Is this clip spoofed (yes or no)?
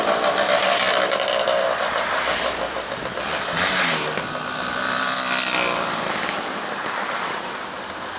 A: yes